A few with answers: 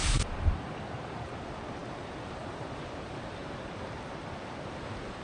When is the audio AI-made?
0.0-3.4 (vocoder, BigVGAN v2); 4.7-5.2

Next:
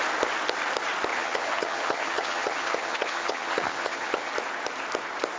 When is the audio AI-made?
1.1-4.3 (vocoder, HiFi-GAN)